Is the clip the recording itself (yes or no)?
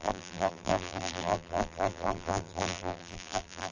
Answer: no